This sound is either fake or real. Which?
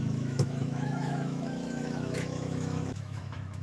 fake